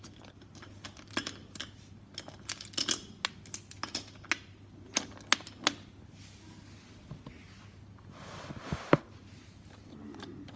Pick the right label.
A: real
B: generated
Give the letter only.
A